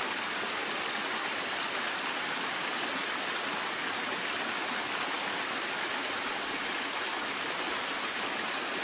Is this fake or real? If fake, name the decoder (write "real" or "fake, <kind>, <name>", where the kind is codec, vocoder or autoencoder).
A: real